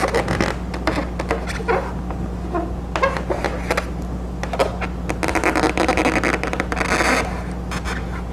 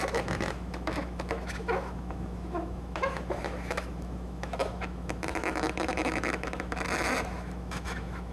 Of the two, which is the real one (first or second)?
first